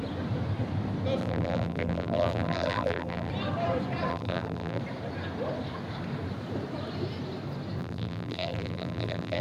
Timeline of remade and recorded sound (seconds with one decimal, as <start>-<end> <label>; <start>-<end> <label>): 0.0-1.2 recorded; 1.2-3.3 remade; 3.3-4.1 recorded; 4.1-4.8 remade; 4.8-7.8 recorded; 7.8-9.4 remade